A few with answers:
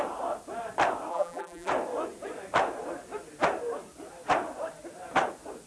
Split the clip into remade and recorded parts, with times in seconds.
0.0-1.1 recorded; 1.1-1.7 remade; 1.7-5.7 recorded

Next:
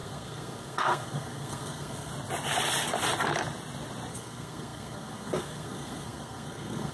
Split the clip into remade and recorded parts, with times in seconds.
0.0-2.1 remade; 2.1-4.1 recorded; 4.1-6.9 remade

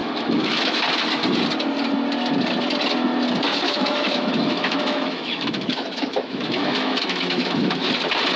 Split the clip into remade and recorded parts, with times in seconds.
0.0-0.8 remade; 0.8-3.5 recorded; 3.5-7.9 remade; 7.9-8.4 recorded

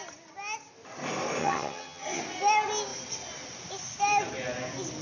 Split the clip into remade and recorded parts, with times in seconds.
0.0-1.4 recorded; 1.4-2.2 remade; 2.2-5.0 recorded

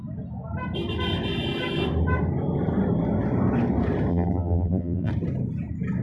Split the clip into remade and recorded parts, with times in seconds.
0.0-4.1 recorded; 4.1-5.1 remade; 5.1-6.0 recorded

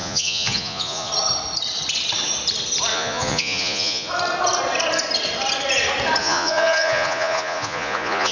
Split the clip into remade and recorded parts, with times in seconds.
0.0-1.1 remade; 1.1-2.9 recorded; 2.9-4.1 remade; 4.1-6.2 recorded; 6.2-8.3 remade

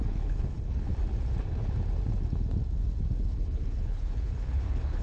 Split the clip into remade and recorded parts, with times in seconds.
0.0-0.9 remade; 0.9-3.2 recorded; 3.2-5.0 remade